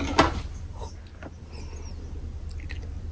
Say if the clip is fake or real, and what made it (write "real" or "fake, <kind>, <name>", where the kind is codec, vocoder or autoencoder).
real